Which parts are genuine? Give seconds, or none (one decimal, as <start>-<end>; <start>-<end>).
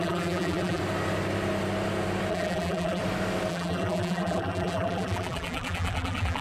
0.8-2.3; 3.0-3.5